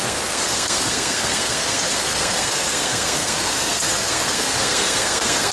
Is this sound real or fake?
fake